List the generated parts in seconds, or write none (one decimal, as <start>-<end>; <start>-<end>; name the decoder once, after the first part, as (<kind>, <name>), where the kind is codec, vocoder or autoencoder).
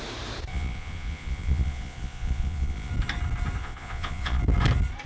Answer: 0.5-2.9 (vocoder, Vocos); 3.6-4.4